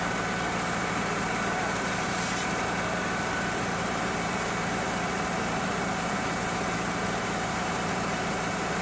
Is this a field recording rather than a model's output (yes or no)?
no